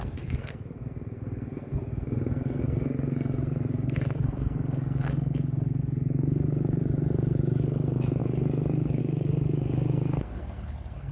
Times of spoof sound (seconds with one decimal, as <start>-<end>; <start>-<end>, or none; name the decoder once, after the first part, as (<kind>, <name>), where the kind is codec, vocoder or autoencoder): 0.0-11.1 (codec, SNAC)